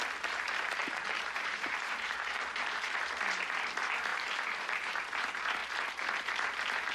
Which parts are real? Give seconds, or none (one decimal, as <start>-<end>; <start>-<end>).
0.0-0.8; 3.0-4.1; 5.0-6.9